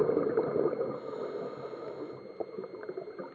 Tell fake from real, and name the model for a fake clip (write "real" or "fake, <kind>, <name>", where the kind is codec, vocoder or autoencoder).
real